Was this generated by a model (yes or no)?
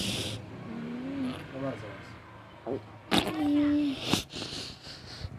no